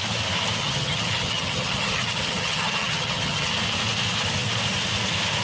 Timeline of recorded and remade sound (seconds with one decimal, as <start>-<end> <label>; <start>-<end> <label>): 0.0-0.6 recorded; 0.6-3.5 remade; 3.5-5.4 recorded